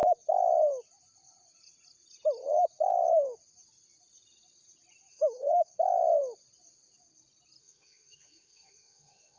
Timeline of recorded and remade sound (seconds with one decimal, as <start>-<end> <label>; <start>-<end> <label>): 0.0-5.1 recorded; 5.1-5.7 remade; 5.7-7.6 recorded; 7.6-9.4 remade